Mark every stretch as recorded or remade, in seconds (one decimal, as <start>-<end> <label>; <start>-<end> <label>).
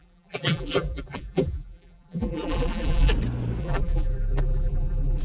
0.0-3.1 remade; 3.1-3.6 recorded; 3.6-5.2 remade